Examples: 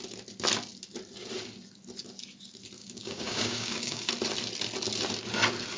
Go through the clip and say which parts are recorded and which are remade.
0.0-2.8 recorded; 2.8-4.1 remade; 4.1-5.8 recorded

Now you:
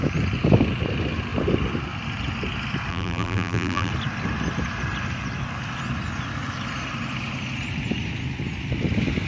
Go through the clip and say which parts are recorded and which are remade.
0.0-2.9 recorded; 2.9-3.9 remade; 3.9-9.3 recorded

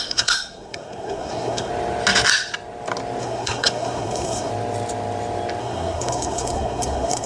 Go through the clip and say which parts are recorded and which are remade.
0.0-1.7 remade; 1.7-3.2 recorded; 3.2-4.5 remade; 4.5-5.6 recorded; 5.6-7.3 remade

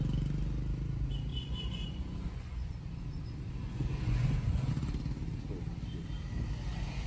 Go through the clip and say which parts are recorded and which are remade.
0.0-1.3 recorded; 1.3-4.7 remade; 4.7-7.1 recorded

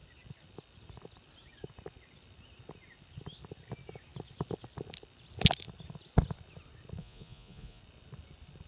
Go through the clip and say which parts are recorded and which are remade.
0.0-7.0 recorded; 7.0-7.8 remade; 7.8-8.7 recorded

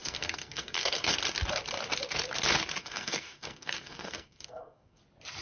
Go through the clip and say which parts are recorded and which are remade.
0.0-1.1 remade; 1.1-2.8 recorded; 2.8-5.0 remade; 5.0-5.4 recorded

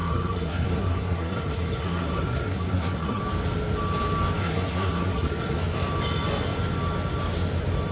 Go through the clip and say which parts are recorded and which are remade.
0.0-3.2 remade; 3.2-4.4 recorded; 4.4-5.6 remade; 5.6-7.9 recorded